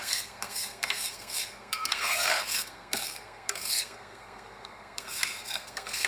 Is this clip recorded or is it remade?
remade